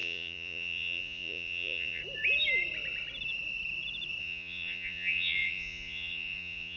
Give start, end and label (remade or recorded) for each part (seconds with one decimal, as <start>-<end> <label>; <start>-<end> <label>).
0.0-2.0 remade; 2.0-4.2 recorded; 4.2-6.8 remade